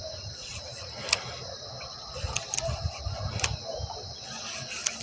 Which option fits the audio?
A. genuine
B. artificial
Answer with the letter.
A